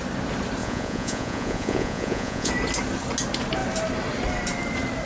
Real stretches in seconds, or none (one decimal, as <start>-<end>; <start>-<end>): 0.0-0.6; 2.5-5.0